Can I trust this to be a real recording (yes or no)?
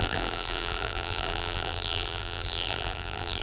no